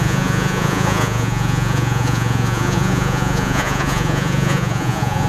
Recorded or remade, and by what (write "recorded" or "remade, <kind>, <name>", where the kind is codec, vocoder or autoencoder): remade, vocoder, Vocos